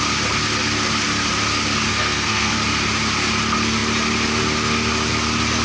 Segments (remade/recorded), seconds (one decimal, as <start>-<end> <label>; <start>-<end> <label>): 0.0-1.9 recorded; 1.9-2.5 remade; 2.5-5.6 recorded